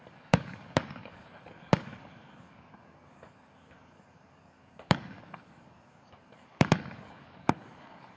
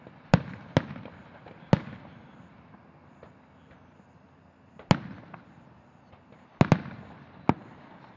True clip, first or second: second